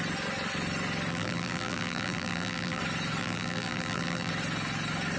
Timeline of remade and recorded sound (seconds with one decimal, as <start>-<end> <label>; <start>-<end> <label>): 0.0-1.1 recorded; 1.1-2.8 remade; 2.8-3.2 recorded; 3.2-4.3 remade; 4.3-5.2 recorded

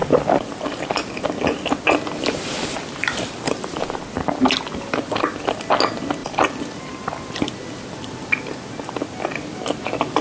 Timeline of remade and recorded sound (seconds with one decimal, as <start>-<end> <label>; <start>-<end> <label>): 0.0-10.2 recorded

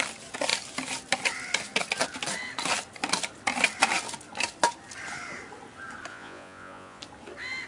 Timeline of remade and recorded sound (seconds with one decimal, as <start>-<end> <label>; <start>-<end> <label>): 0.0-6.1 recorded; 6.1-7.0 remade; 7.0-7.7 recorded

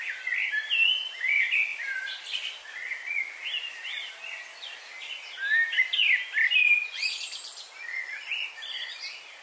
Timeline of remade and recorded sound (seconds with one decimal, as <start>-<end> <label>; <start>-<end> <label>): 0.0-6.6 recorded; 6.6-7.2 remade; 7.2-9.4 recorded

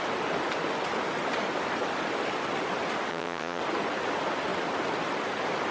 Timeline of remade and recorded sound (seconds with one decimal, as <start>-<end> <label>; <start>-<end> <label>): 0.0-3.1 recorded; 3.1-3.6 remade; 3.6-5.7 recorded

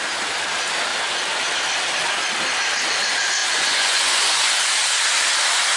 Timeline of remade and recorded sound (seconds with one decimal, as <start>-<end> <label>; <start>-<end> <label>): 0.0-3.4 recorded; 3.4-4.6 remade; 4.6-5.8 recorded

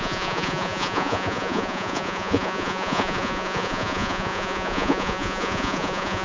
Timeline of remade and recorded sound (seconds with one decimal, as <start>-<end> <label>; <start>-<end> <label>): 0.0-6.2 remade

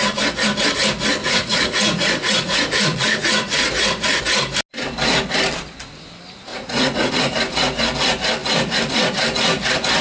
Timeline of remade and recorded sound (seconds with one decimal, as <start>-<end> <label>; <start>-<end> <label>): 0.0-1.2 recorded; 1.2-4.2 remade; 4.2-6.5 recorded; 6.5-7.1 remade; 7.1-10.0 recorded